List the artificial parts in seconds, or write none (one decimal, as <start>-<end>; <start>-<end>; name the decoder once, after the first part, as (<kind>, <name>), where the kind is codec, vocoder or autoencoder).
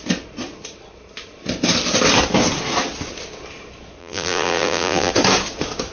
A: 4.0-5.1 (vocoder, BigVGAN v2)